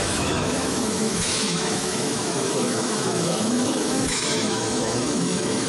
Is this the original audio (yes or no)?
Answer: no